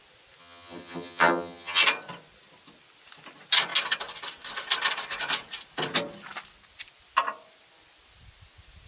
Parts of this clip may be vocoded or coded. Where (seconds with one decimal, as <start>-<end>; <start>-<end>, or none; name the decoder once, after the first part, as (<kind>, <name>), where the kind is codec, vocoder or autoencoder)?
0.4-1.8 (vocoder, HiFi-GAN)